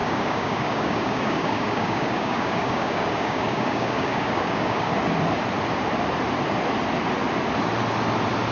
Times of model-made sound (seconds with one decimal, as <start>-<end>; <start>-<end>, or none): 0.0-4.9